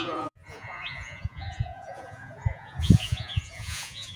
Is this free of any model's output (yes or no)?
no